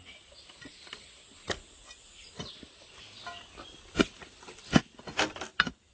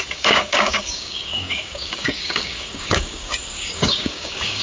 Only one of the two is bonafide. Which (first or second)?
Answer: first